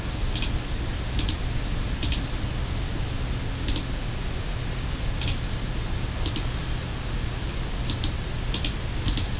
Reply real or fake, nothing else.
real